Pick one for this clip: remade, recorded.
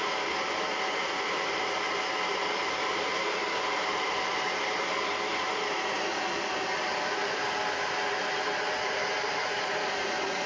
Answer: recorded